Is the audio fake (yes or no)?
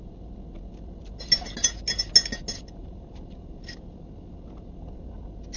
no